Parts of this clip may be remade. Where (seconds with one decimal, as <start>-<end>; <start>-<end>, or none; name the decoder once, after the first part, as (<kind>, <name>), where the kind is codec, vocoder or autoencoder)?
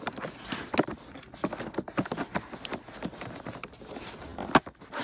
none